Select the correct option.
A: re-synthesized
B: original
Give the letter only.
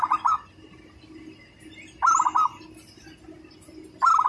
B